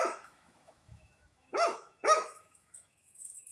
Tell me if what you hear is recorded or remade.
remade